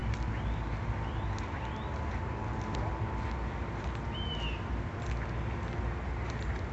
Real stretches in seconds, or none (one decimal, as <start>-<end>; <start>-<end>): 0.0-6.7